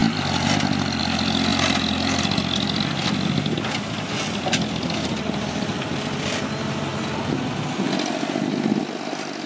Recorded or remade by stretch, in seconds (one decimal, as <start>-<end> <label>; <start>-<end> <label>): 0.0-1.5 recorded; 1.5-3.6 remade; 3.6-9.5 recorded